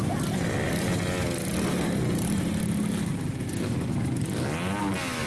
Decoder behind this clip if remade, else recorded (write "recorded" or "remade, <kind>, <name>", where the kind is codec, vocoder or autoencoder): recorded